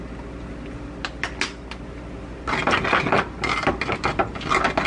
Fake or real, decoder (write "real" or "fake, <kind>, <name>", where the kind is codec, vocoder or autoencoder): real